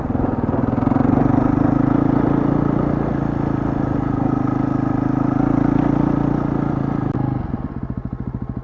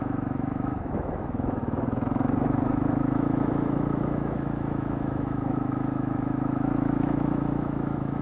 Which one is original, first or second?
first